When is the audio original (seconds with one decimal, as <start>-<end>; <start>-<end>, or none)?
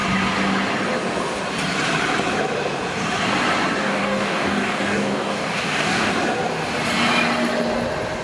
0.0-3.8; 6.1-8.2